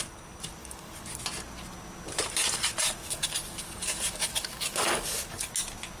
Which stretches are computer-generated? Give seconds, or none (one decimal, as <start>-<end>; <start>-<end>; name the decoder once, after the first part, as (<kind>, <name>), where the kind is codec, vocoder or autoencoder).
0.6-1.2 (codec, DAC); 3.0-5.5